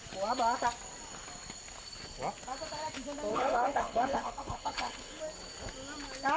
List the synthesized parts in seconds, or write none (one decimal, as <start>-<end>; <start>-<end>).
3.3-5.2